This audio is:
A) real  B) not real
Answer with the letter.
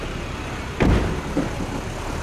A